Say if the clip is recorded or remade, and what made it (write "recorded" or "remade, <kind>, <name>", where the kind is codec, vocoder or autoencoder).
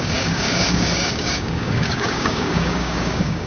remade, codec, DAC